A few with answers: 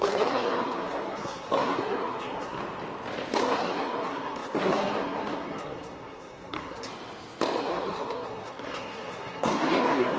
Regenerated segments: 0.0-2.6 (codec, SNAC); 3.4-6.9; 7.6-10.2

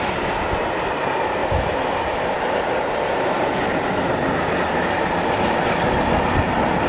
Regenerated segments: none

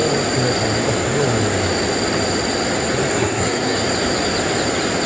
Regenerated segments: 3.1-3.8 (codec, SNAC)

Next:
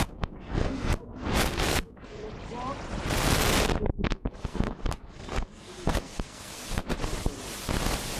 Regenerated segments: 0.0-2.2 (codec, SNAC); 3.9-6.9

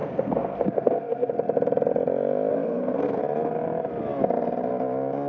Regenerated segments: 0.0-1.3 (codec, SNAC); 2.5-3.2

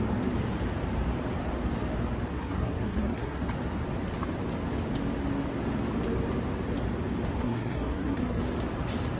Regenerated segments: 2.3-3.4 (codec, SNAC); 7.4-8.4

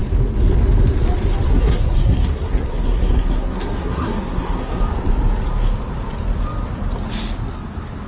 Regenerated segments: 1.5-4.8 (codec, SNAC)

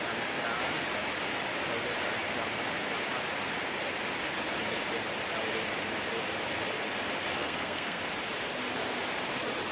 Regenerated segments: 7.4-8.0 (codec, SNAC)